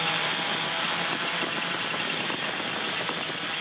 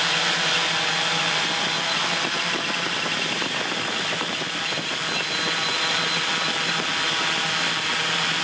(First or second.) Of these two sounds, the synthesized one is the second